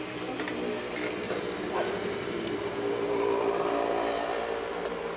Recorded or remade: recorded